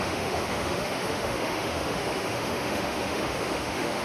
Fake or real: fake